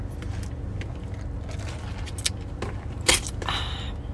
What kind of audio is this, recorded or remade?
recorded